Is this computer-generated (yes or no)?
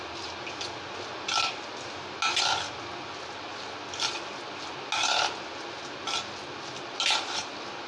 no